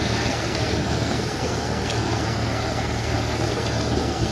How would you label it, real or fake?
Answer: fake